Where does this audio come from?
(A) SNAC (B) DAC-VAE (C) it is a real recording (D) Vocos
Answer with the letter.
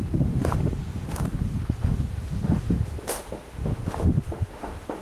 B